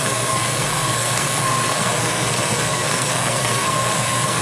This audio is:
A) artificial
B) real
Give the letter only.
A